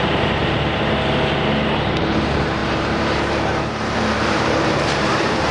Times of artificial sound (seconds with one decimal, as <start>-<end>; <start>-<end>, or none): 0.0-0.4; 1.8-5.5